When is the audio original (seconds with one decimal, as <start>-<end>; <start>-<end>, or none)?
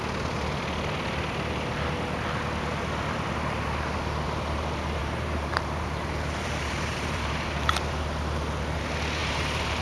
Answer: 0.0-5.0; 7.7-9.2